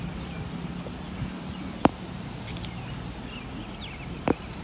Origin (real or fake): real